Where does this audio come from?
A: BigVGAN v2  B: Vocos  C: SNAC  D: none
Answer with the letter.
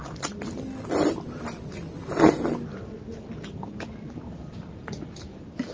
D